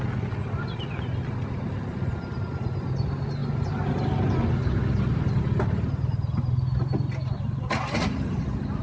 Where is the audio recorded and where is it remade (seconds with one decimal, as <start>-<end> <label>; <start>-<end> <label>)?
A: 0.0-8.8 recorded